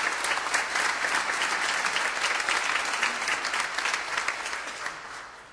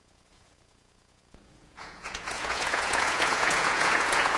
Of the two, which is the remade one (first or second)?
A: second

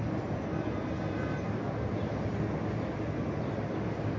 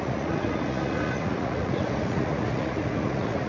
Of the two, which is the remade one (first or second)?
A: second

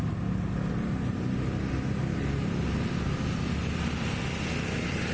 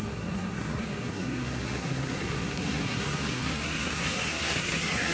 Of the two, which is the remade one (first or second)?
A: second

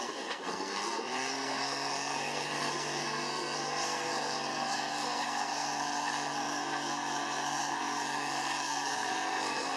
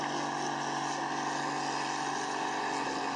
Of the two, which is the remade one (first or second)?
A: first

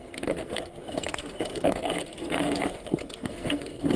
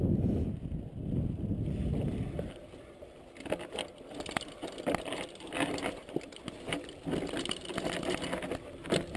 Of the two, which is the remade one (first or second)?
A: first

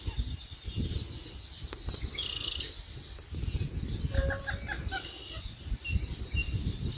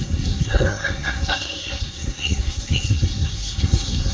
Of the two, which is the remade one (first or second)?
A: second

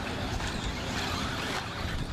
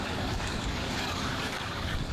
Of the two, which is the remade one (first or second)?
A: second